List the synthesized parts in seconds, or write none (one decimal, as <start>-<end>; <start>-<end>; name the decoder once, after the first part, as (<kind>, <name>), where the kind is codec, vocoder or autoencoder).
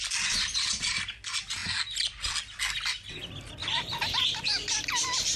none